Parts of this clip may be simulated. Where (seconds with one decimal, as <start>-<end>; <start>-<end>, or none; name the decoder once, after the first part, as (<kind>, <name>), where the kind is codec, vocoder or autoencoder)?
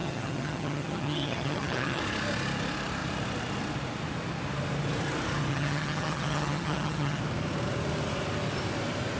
0.0-2.0 (vocoder, HiFi-GAN); 5.5-7.2